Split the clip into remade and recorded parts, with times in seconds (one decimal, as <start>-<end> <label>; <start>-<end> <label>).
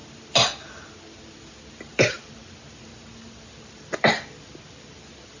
0.0-5.4 recorded